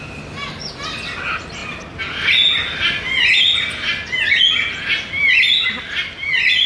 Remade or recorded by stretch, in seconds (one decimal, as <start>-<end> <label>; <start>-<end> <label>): 0.0-6.7 recorded